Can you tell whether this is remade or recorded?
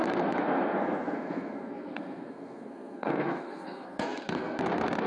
remade